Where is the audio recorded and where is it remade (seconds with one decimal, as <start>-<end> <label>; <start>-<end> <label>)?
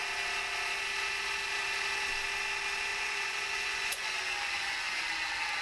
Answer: 0.0-2.9 recorded; 2.9-5.1 remade; 5.1-5.6 recorded